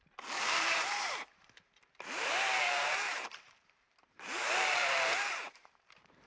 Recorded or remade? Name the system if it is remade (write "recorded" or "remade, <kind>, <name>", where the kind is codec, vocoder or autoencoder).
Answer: remade, vocoder, BigVGAN v2